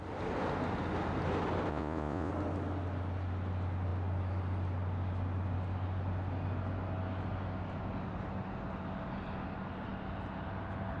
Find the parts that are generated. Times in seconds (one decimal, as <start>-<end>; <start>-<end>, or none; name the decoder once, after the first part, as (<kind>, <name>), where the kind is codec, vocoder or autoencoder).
1.7-2.3 (vocoder, Vocos)

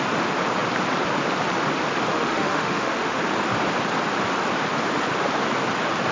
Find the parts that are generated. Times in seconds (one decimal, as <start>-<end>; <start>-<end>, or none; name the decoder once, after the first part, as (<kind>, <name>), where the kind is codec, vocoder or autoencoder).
2.1-3.2 (autoencoder, DAC-VAE)

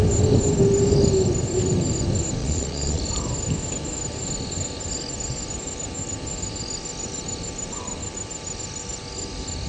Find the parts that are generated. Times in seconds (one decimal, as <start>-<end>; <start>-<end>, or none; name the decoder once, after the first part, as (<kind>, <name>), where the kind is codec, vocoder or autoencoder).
2.4-3.0 (vocoder, Vocos)

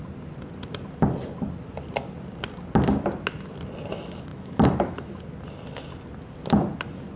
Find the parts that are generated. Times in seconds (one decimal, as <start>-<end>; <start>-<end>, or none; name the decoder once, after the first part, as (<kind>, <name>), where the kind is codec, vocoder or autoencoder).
4.3-5.2 (autoencoder, DAC-VAE)

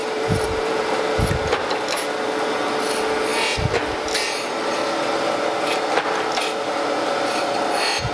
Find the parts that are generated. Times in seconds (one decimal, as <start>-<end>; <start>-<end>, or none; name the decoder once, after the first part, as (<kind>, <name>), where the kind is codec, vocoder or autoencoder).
0.0-0.8 (vocoder, BigVGAN v2)

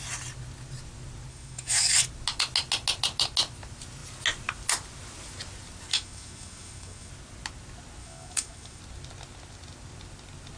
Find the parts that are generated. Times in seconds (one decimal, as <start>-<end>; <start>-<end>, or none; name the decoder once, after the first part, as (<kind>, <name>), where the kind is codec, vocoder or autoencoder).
1.3-2.0 (autoencoder, DAC-VAE); 5.9-7.1; 8.0-8.8

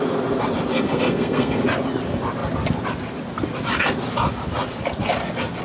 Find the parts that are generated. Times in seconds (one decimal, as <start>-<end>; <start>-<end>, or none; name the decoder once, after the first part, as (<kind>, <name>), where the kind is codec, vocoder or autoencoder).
0.7-1.6 (codec, SNAC)

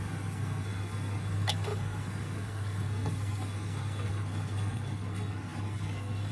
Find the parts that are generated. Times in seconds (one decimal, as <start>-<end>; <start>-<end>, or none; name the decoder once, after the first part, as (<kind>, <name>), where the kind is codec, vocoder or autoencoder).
0.0-6.3 (codec, SNAC)